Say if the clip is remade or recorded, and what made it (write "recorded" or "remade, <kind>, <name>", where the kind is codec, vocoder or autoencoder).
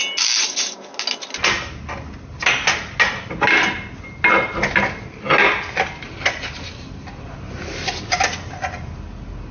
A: recorded